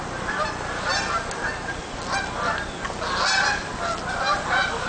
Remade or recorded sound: recorded